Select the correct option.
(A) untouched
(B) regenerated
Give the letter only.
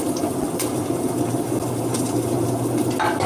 A